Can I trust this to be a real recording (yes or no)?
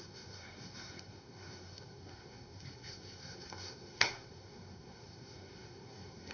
no